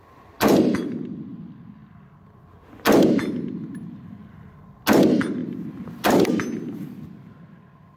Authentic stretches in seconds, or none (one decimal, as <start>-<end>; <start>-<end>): 0.0-8.0